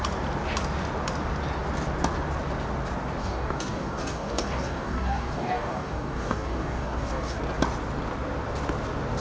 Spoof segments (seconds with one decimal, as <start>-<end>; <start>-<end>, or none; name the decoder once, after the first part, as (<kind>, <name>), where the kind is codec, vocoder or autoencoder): 3.2-7.4 (codec, DAC)

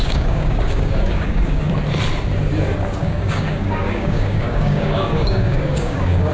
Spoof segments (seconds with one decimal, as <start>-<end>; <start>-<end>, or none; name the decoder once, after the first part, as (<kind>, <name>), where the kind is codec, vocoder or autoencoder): 0.0-1.6 (codec, DAC); 3.0-6.3

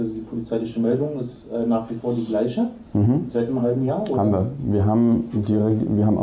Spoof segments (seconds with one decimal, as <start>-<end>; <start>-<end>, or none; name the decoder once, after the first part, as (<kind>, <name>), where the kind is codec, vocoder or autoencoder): 0.7-1.2 (codec, DAC); 3.2-3.9

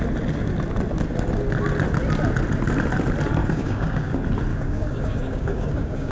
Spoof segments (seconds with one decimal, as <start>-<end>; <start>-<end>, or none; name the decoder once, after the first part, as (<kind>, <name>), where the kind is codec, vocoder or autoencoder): 3.4-4.1 (codec, DAC); 4.5-6.1

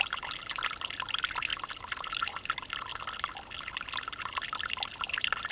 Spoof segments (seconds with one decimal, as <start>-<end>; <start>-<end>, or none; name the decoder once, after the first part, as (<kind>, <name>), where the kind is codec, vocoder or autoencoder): none

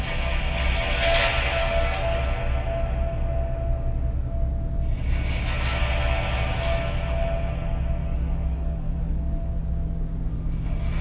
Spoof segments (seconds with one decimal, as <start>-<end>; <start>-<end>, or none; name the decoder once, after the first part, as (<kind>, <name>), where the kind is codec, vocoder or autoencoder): 1.6-2.2 (codec, DAC); 8.0-9.6